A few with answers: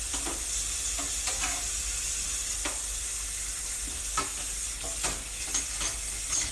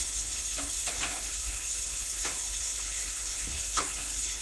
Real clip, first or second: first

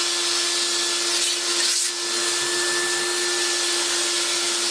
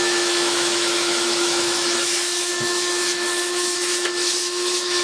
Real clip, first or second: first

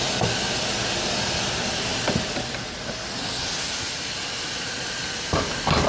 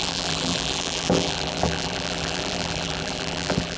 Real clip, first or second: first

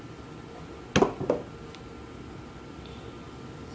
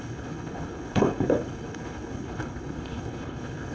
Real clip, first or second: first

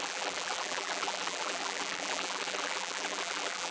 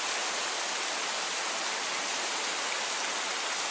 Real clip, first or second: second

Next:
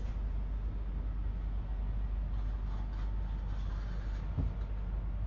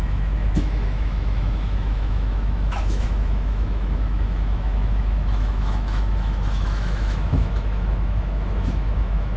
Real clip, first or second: first